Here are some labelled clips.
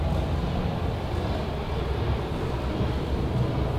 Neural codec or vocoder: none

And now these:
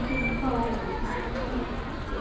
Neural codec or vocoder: none